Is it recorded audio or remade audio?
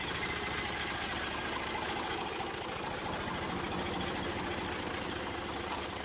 recorded